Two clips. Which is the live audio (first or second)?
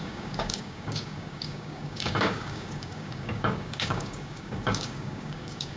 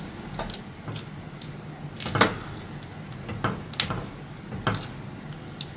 second